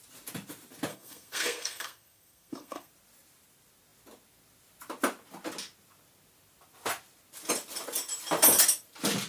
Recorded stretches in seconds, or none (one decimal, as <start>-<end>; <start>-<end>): 0.0-0.9; 2.9-9.3

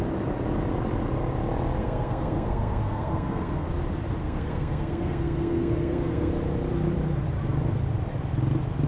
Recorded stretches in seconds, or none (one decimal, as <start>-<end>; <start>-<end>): 0.0-1.8; 3.7-4.2; 6.3-8.9

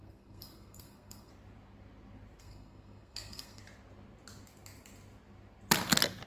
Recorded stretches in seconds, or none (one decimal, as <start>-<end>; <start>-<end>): 1.3-2.4; 3.6-6.3

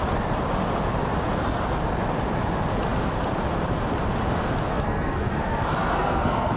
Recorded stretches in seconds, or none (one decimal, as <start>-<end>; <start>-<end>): 0.0-4.7

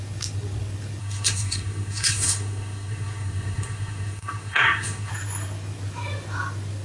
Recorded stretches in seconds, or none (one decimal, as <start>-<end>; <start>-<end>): 0.0-1.0; 5.1-6.8